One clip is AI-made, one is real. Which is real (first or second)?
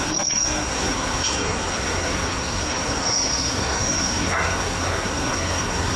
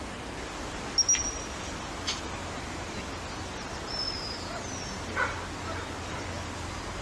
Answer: second